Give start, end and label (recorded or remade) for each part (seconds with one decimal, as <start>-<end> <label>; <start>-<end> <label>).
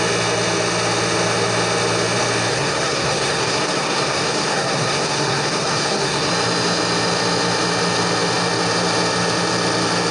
0.0-2.5 recorded; 2.5-6.3 remade; 6.3-10.1 recorded